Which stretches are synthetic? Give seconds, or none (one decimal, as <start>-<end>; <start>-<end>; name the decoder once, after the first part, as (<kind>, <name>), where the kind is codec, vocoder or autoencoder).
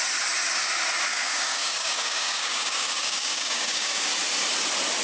1.1-4.1 (codec, DAC)